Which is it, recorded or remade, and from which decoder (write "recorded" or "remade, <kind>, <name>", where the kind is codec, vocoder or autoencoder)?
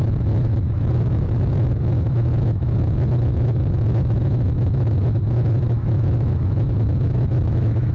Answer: remade, autoencoder, DAC-VAE